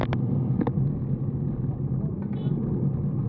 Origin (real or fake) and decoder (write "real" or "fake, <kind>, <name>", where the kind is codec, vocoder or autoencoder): real